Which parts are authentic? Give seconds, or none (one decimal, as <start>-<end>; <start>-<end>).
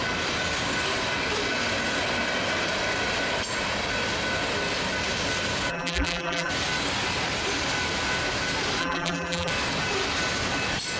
0.0-5.7; 6.5-8.8; 9.5-11.0